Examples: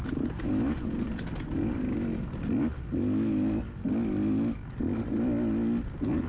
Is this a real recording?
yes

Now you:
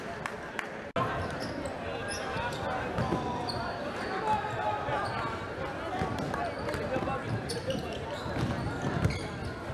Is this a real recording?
yes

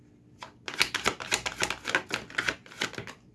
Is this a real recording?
yes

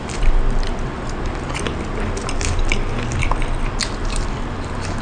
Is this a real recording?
yes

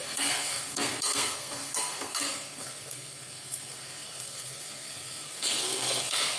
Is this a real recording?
no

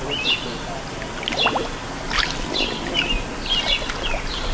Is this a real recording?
yes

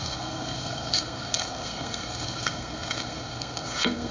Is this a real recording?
no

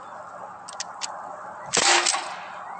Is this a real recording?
yes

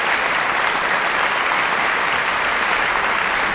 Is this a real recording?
yes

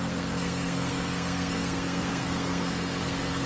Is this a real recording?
no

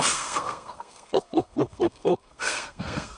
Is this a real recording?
no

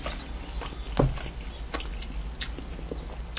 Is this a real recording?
yes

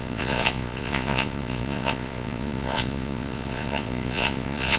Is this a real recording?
no